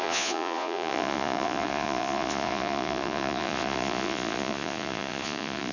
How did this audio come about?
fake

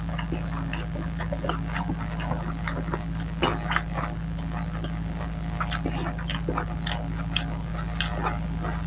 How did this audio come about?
real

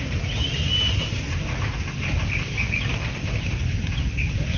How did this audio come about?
real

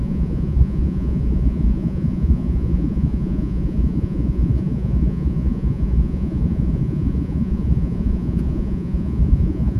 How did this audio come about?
fake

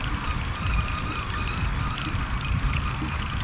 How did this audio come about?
real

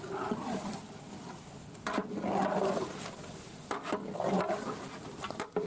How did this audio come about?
real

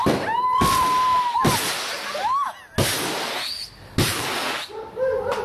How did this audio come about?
real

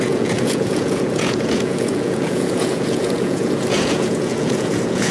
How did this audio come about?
fake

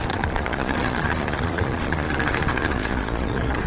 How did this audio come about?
fake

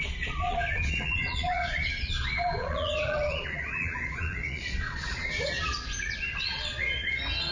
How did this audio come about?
fake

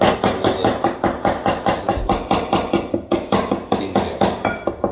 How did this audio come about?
real